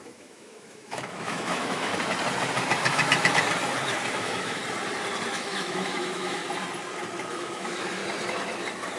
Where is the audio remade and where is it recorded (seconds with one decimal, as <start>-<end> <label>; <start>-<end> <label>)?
0.0-1.9 remade; 1.9-4.1 recorded; 4.1-4.6 remade; 4.6-5.3 recorded; 5.3-6.4 remade; 6.4-7.3 recorded; 7.3-8.0 remade; 8.0-9.0 recorded